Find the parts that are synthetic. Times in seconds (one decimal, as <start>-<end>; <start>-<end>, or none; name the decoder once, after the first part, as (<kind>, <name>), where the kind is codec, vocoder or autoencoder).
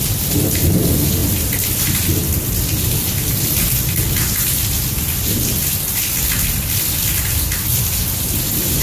none